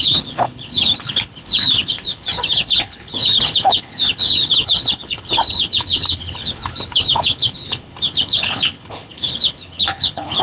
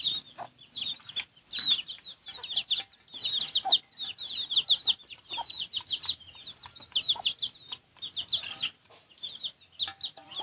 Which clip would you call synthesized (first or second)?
first